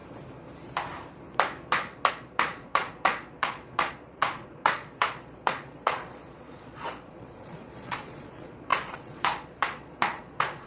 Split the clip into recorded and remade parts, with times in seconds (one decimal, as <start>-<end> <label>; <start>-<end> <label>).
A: 0.0-2.1 recorded; 2.1-10.7 remade